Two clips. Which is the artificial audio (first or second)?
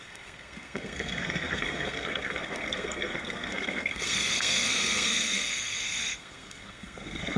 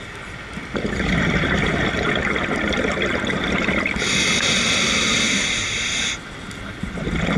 first